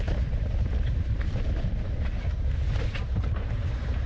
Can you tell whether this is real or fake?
fake